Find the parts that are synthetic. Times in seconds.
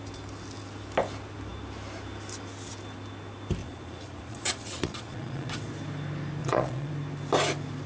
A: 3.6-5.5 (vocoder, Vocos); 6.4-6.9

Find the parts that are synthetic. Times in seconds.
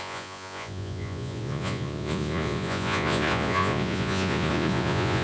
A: 0.0-5.2 (vocoder, Vocos)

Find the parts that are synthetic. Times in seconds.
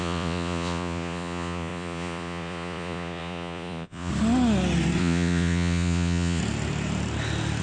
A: 0.0-4.1 (vocoder, Vocos); 5.0-6.4